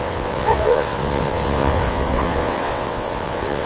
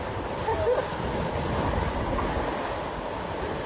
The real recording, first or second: second